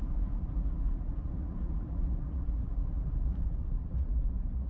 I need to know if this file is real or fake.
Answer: fake